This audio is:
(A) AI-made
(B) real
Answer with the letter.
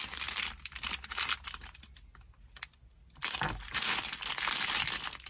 B